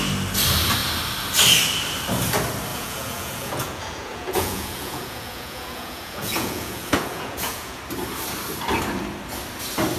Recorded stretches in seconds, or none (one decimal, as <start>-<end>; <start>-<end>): 0.0-2.7; 7.8-10.0